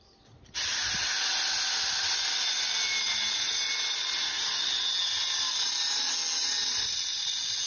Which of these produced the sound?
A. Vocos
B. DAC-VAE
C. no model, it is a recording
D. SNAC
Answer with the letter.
C